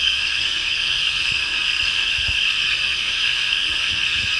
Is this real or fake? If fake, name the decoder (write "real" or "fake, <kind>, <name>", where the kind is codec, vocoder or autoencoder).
fake, codec, SNAC